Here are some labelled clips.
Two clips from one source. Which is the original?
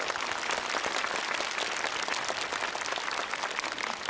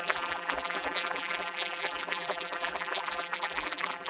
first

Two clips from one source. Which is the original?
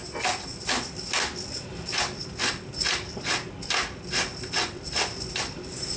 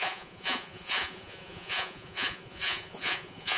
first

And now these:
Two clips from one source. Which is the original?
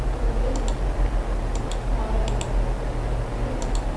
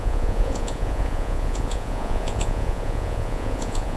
first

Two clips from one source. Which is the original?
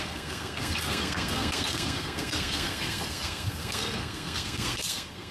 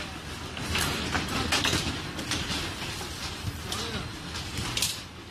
second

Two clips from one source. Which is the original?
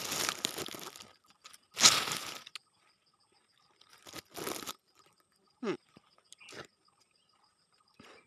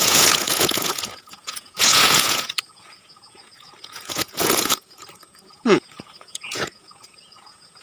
first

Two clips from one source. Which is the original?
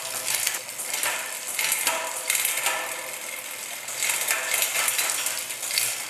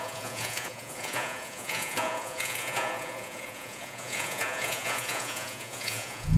first